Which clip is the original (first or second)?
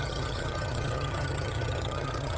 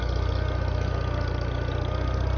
second